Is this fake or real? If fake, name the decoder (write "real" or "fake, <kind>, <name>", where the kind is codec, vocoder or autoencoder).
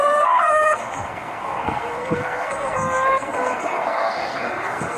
fake, codec, SNAC